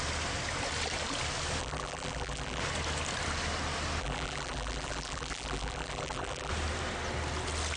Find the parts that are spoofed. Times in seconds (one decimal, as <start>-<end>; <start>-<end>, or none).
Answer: 1.6-2.6; 4.0-6.5